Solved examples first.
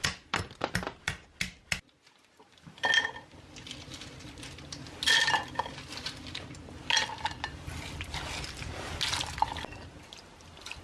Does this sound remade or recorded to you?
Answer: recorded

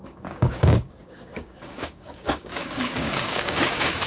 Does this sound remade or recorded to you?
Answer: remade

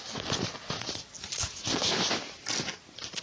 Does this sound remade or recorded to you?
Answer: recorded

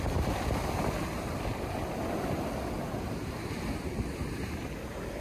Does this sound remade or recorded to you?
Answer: recorded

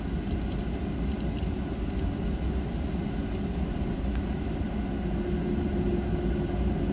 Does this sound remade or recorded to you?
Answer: recorded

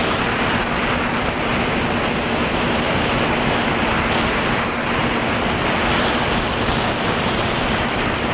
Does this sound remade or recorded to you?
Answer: recorded